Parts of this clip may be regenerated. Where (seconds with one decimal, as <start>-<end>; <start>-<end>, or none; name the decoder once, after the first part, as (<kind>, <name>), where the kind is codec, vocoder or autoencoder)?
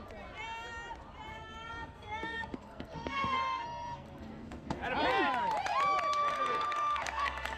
1.3-4.8 (codec, SNAC); 6.3-7.6